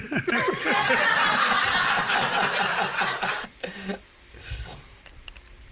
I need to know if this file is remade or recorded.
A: recorded